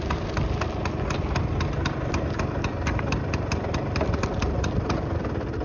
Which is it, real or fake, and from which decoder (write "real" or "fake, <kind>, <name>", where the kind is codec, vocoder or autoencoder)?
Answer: real